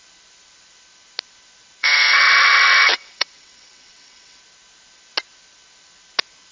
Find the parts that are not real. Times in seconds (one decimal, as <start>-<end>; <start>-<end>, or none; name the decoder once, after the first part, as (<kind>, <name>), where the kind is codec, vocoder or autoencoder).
1.8-4.4 (vocoder, WaveNeXt)